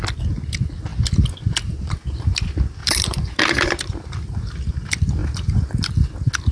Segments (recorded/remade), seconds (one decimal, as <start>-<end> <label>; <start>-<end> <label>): 0.0-2.8 recorded; 2.8-4.7 remade; 4.7-5.2 recorded; 5.2-5.9 remade; 5.9-6.5 recorded